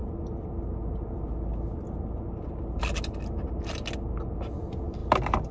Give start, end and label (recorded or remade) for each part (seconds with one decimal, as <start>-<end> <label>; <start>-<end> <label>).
0.0-5.5 recorded